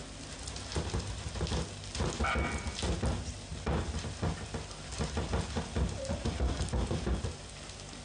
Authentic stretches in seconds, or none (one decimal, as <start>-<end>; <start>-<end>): 0.0-8.0